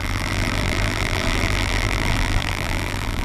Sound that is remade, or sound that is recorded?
remade